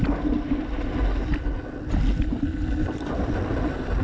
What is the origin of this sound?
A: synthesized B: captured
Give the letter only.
B